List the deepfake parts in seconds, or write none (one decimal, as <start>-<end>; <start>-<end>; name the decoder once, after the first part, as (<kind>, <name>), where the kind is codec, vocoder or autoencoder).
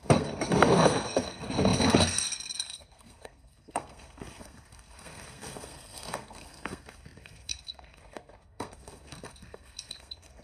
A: 0.0-10.4 (codec, SNAC)